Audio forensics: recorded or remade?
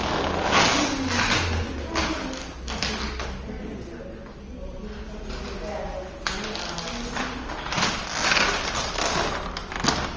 recorded